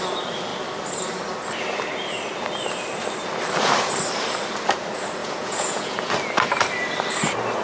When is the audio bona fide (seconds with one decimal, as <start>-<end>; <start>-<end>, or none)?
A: 0.0-5.2; 6.1-7.6